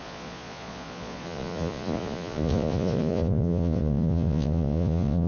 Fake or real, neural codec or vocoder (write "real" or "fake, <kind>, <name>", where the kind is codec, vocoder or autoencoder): fake, vocoder, Vocos